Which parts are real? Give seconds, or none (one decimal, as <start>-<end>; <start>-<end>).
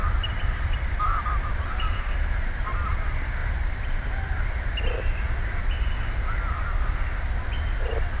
2.3-8.2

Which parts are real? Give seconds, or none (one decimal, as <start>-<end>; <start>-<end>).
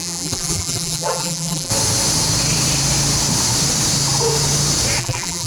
1.7-5.0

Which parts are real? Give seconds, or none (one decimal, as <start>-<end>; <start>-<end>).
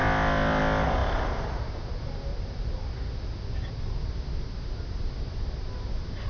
0.0-2.3; 3.8-6.3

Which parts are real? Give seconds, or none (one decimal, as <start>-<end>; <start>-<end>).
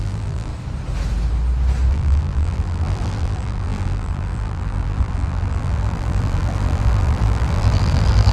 0.5-1.9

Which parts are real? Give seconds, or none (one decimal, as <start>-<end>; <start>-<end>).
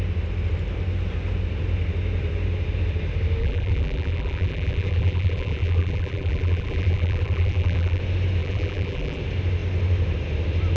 0.0-3.4; 8.0-8.4; 9.2-10.8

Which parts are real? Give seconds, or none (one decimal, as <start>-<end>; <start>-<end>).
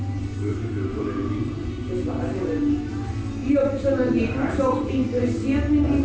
0.0-0.5; 1.0-1.8; 2.9-3.4; 4.9-6.0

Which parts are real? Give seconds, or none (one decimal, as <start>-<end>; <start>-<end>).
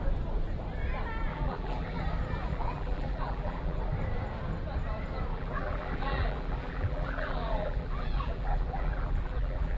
0.0-1.3; 2.0-2.5; 3.8-5.3